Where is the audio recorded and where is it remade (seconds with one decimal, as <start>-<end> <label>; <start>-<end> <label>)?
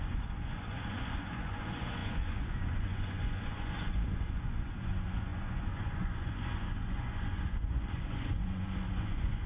0.0-9.5 remade